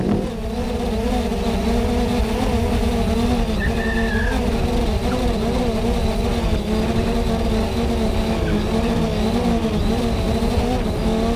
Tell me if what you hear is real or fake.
real